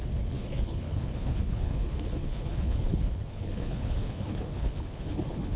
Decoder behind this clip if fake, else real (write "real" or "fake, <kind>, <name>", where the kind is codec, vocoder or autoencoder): fake, codec, HILCodec